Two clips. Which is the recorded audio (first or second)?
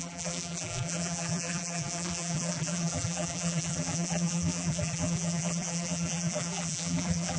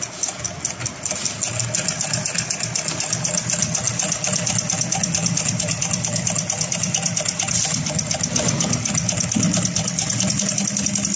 second